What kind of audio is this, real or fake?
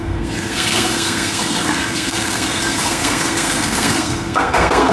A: fake